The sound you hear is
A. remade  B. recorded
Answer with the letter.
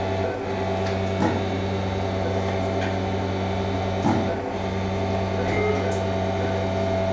B